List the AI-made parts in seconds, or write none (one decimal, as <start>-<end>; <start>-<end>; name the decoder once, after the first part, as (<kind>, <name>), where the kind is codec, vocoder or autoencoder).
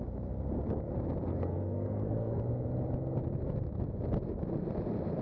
1.3-2.4 (codec, SNAC)